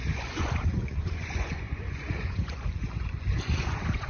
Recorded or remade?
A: remade